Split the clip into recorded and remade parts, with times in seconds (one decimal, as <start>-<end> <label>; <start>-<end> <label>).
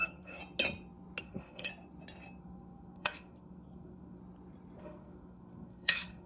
0.0-0.4 remade; 0.4-1.2 recorded; 1.2-1.7 remade; 1.7-2.4 recorded; 2.4-4.2 remade; 4.2-4.8 recorded; 4.8-6.3 remade